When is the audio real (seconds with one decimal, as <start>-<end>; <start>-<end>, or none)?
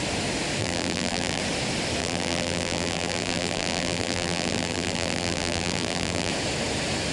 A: 0.0-0.6; 1.4-2.0; 6.3-7.1